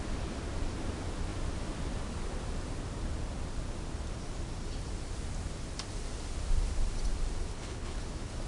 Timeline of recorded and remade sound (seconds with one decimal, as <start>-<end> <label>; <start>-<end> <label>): 0.0-7.5 recorded; 7.5-8.0 remade; 8.0-8.5 recorded